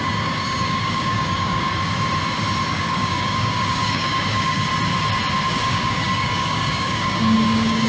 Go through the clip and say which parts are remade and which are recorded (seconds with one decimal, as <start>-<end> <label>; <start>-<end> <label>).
0.0-1.7 remade; 1.7-2.8 recorded; 2.8-4.7 remade; 4.7-5.5 recorded; 5.5-7.9 remade